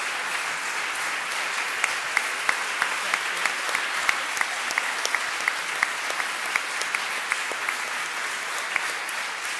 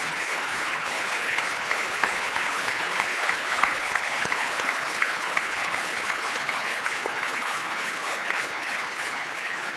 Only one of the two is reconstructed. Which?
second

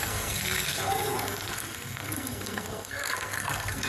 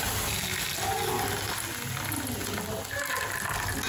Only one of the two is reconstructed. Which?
first